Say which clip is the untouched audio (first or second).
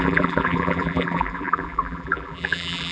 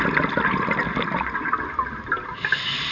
second